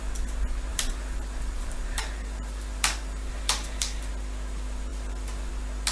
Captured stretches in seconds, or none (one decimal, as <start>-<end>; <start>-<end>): 0.0-0.7; 4.1-4.9; 5.5-5.9